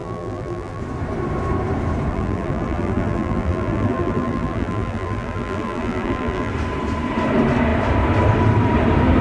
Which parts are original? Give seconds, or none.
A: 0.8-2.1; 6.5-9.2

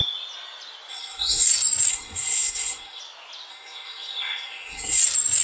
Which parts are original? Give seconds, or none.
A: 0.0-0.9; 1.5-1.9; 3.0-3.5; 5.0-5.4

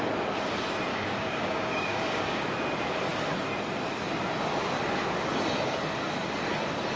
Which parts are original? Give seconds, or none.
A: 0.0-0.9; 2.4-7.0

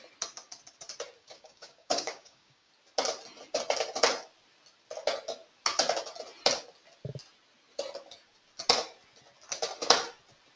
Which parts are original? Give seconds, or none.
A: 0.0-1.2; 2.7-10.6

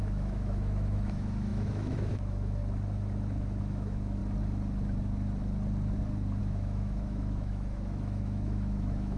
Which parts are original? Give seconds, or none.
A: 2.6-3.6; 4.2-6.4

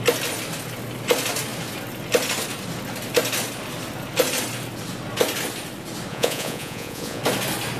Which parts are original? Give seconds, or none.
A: 0.0-6.1; 7.2-7.8

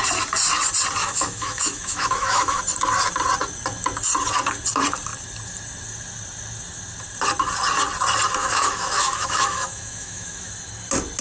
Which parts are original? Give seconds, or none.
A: 0.0-1.0; 2.6-8.4; 10.5-11.2